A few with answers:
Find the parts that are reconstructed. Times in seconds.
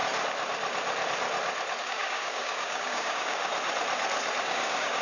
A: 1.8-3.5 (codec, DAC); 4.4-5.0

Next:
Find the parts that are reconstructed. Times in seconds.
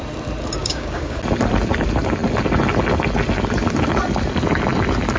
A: 0.6-1.2 (codec, DAC)